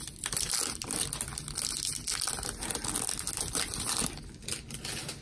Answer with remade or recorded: recorded